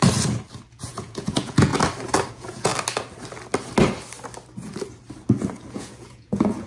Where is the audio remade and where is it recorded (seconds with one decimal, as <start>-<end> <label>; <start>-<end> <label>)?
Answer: 0.0-0.7 recorded; 0.7-1.7 remade; 1.7-2.3 recorded; 2.3-2.7 remade; 2.7-5.7 recorded; 5.7-6.7 remade